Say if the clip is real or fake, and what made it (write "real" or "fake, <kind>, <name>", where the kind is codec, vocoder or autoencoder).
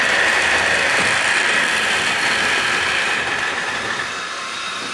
fake, vocoder, BigVGAN v2